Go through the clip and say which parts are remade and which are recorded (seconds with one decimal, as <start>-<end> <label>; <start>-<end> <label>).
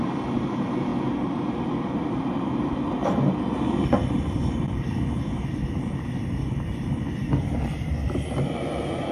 0.0-0.9 remade; 0.9-2.0 recorded; 2.0-9.1 remade